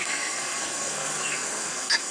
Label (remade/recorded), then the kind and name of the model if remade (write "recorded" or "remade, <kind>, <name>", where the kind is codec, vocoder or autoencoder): remade, codec, SNAC